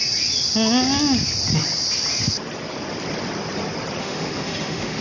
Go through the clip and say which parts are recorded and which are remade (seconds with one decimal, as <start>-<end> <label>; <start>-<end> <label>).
0.0-4.0 recorded; 4.0-5.0 remade